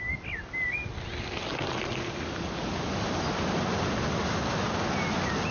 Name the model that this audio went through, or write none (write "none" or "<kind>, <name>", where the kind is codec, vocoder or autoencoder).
none